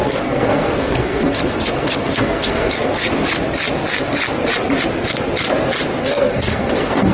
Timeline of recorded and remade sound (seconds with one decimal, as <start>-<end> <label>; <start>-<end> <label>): 0.0-3.0 remade; 3.0-6.0 recorded; 6.0-7.1 remade